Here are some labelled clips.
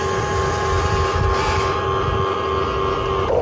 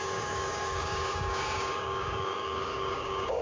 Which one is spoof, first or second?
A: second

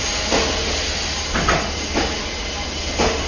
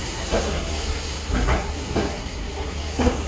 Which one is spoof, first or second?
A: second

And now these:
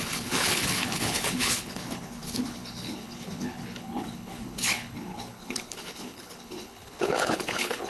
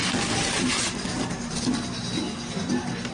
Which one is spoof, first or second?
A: first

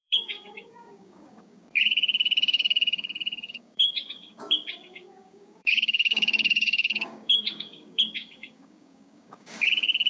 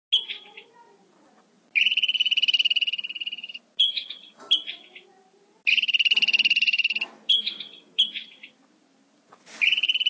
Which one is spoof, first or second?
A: first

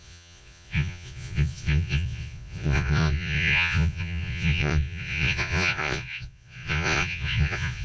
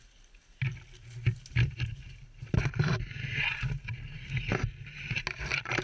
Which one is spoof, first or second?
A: first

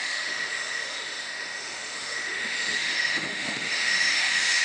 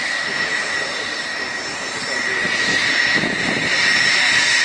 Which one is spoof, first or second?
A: first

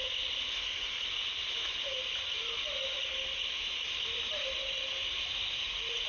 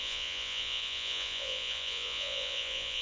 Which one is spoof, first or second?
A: second